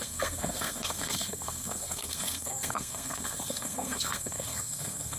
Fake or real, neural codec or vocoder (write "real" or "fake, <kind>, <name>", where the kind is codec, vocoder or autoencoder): fake, codec, SNAC